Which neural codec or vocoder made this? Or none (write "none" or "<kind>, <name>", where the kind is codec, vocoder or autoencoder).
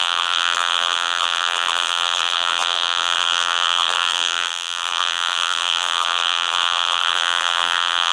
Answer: vocoder, BigVGAN v2